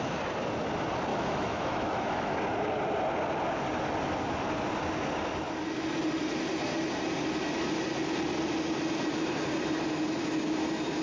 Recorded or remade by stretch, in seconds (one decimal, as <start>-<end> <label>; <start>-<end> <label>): 0.0-1.1 recorded; 1.1-2.4 remade; 2.4-11.0 recorded